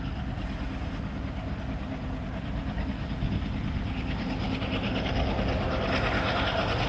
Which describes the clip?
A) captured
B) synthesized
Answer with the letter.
A